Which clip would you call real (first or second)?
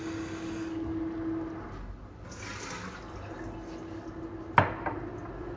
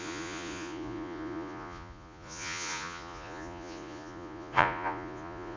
first